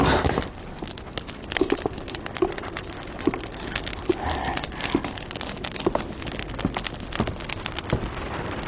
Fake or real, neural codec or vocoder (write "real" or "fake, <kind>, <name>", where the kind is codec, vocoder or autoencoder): real